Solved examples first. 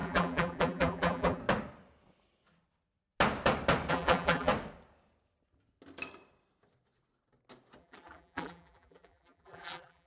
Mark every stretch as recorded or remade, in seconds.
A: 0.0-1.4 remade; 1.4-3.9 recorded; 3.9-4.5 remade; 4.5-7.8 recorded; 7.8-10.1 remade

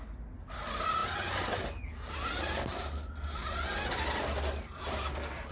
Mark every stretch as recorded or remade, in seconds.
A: 0.0-5.5 recorded

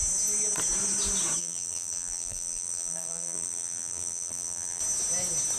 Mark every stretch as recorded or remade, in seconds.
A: 0.0-1.4 recorded; 1.4-4.8 remade; 4.8-5.6 recorded

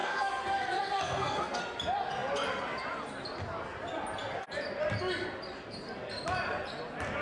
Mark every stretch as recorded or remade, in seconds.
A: 0.0-1.6 remade; 1.6-7.2 recorded

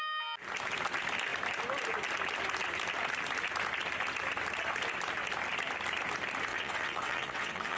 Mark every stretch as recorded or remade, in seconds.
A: 0.0-6.5 recorded; 6.5-7.8 remade

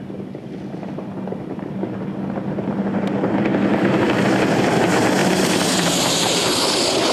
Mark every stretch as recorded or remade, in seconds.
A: 0.0-5.2 recorded; 5.2-6.6 remade; 6.6-7.1 recorded

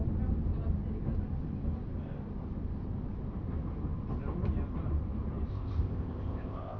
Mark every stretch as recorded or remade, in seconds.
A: 0.0-5.5 recorded; 5.5-6.8 remade